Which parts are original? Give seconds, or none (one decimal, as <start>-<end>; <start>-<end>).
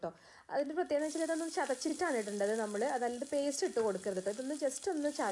0.0-5.3